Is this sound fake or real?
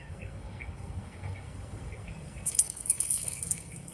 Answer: fake